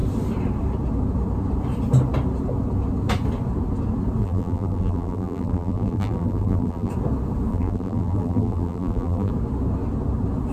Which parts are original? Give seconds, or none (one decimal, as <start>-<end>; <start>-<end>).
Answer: 0.0-4.2; 6.9-7.5; 9.3-10.5